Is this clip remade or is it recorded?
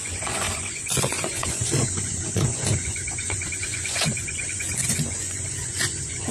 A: remade